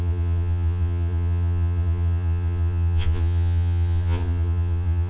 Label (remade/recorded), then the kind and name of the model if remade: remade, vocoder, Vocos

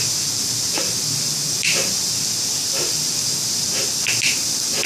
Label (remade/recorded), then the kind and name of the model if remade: recorded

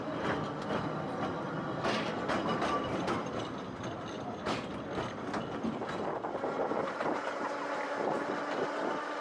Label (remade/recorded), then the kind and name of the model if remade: recorded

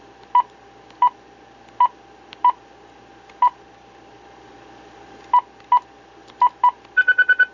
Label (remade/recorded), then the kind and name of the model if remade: recorded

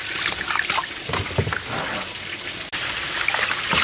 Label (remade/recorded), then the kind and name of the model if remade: recorded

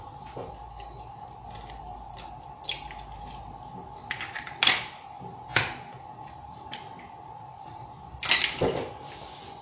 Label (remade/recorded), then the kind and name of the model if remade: recorded